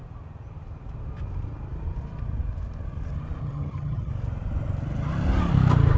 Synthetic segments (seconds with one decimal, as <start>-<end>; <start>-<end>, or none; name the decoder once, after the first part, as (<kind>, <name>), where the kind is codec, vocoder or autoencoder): 3.4-4.1 (vocoder, HiFi-GAN)